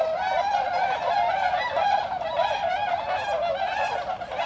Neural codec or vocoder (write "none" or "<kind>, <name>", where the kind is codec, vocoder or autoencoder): none